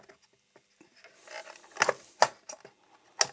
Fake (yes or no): no